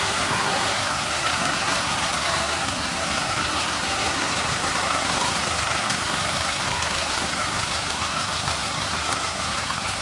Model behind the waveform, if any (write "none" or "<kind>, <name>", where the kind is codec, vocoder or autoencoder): codec, SNAC